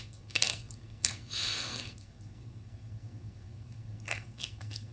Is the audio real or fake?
fake